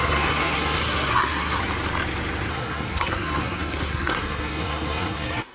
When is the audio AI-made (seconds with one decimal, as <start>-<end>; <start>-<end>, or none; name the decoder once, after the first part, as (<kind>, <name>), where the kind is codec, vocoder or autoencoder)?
0.0-1.6 (codec, SNAC); 2.5-5.5